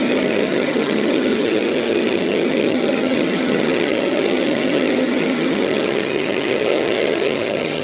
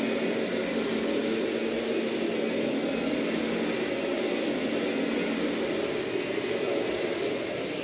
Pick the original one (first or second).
second